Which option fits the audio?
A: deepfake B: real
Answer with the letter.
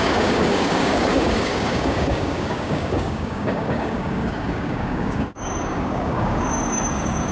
A